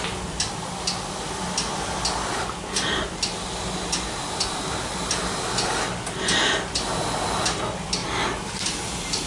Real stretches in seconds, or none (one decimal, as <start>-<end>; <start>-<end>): 0.0-2.3; 3.0-8.0